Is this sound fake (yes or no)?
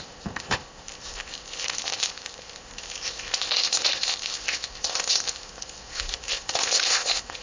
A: yes